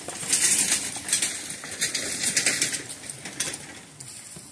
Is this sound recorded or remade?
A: recorded